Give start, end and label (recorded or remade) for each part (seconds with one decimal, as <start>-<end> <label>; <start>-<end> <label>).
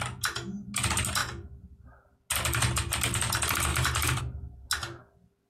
0.0-3.7 recorded; 3.7-4.2 remade; 4.2-5.5 recorded